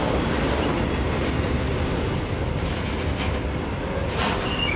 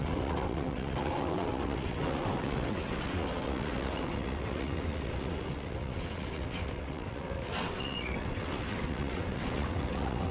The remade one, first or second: second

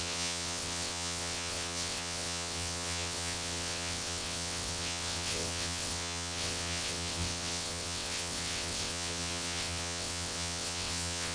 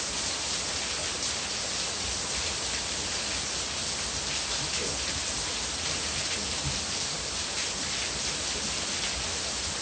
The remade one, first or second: first